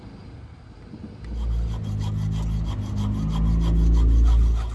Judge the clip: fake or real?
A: real